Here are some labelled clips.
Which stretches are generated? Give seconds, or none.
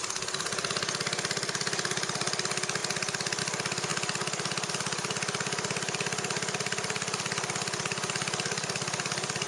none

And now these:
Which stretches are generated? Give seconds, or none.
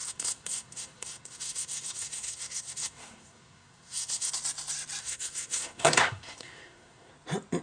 0.0-4.3 (codec, SNAC); 5.0-7.1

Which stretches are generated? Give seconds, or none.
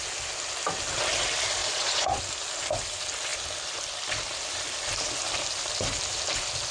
1.6-2.2 (vocoder, Vocos)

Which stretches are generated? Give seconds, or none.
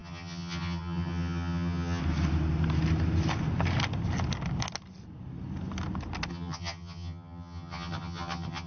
0.0-2.0 (vocoder, HiFi-GAN); 6.3-8.7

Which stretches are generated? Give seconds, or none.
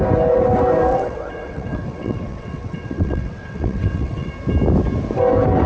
0.9-4.3 (vocoder, WaveNeXt)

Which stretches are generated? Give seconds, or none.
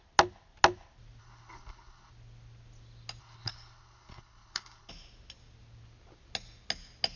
1.2-2.1 (codec, HILCodec); 3.2-4.9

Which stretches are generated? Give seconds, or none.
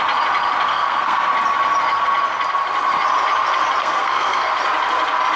0.7-1.3 (codec, SNAC); 3.8-4.5